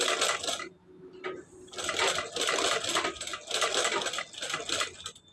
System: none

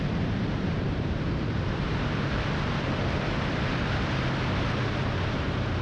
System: vocoder, BigVGAN v2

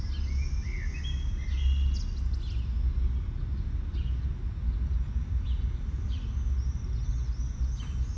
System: none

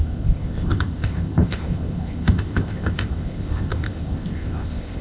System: codec, ZipCodec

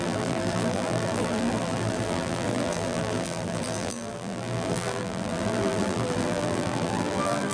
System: vocoder, BigVGAN v2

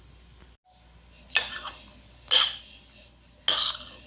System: none